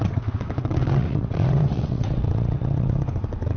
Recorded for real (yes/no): no